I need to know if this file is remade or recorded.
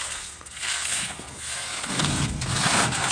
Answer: remade